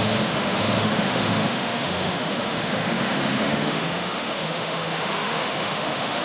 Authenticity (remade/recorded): remade